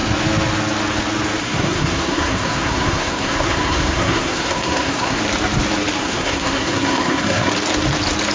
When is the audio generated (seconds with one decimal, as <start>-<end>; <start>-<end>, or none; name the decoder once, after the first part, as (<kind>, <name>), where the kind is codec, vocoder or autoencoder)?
1.4-5.2 (codec, SNAC); 6.0-7.5